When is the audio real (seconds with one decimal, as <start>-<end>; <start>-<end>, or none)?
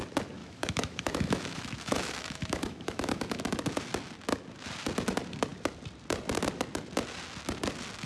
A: 0.0-0.4; 3.4-8.1